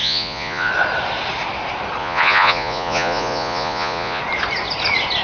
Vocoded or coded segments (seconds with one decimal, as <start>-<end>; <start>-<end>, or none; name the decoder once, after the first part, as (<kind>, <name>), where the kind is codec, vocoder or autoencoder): 0.0-0.7 (vocoder, Vocos); 2.0-4.2